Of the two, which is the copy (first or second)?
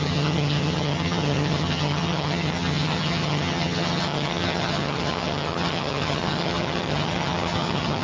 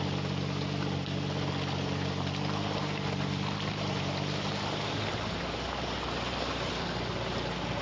first